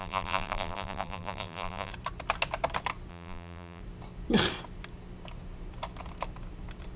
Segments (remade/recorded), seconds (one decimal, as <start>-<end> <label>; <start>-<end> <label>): 0.0-1.9 remade; 1.9-3.1 recorded; 3.1-3.8 remade; 3.8-7.0 recorded

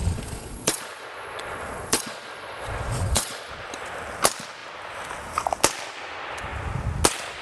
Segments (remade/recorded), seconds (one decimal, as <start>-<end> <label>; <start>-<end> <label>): 0.0-3.5 remade; 3.5-7.4 recorded

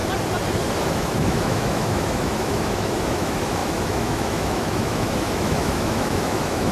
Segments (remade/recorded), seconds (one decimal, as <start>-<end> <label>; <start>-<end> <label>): 0.0-0.9 recorded; 0.9-6.7 remade

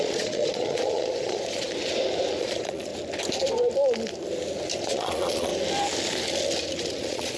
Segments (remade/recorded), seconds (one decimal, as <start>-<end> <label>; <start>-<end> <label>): 0.0-1.7 remade; 1.7-2.4 recorded; 2.4-2.9 remade; 2.9-4.8 recorded; 4.8-5.5 remade; 5.5-6.8 recorded; 6.8-7.4 remade